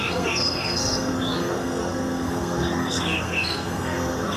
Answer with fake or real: fake